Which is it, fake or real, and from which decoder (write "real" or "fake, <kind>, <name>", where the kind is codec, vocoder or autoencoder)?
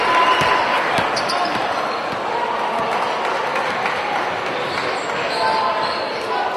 real